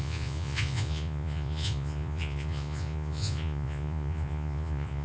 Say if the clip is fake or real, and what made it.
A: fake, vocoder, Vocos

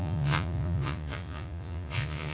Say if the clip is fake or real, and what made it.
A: fake, vocoder, Vocos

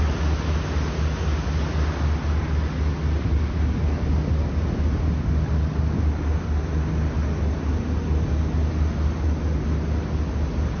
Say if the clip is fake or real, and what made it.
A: real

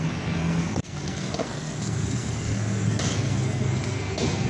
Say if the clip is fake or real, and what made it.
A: fake, codec, SNAC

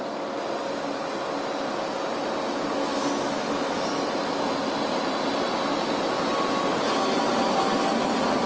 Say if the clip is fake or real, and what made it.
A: real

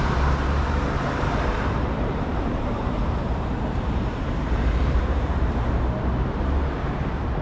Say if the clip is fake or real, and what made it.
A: fake, vocoder, BigVGAN v2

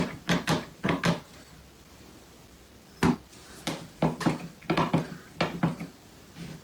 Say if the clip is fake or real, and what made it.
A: real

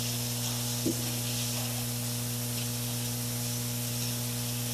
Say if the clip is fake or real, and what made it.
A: real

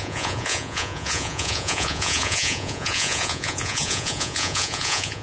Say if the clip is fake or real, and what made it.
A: fake, vocoder, Vocos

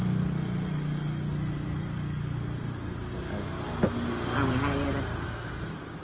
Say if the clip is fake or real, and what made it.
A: real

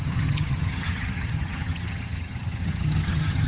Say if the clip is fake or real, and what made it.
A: fake, vocoder, HiFi-GAN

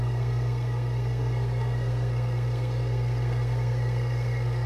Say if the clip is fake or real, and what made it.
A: fake, codec, SNAC